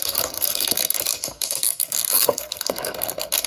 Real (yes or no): no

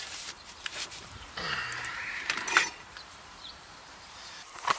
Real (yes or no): no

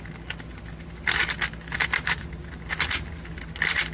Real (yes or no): yes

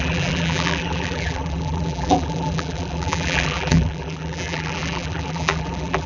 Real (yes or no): no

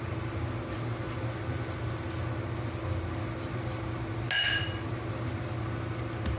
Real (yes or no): yes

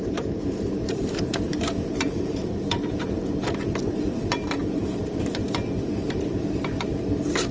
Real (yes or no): no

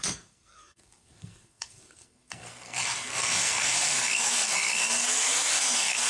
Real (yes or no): no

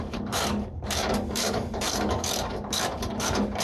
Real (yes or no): no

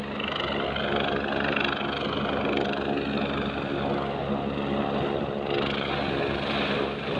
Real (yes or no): yes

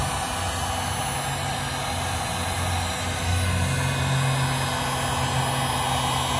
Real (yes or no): yes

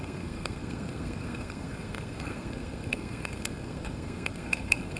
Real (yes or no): no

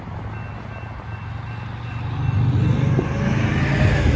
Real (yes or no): yes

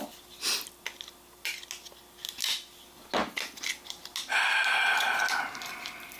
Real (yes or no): yes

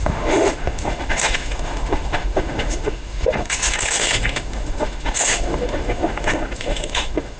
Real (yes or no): no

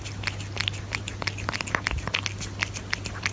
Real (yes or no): yes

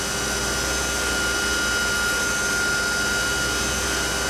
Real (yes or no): yes